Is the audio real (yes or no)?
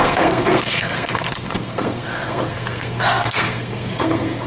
no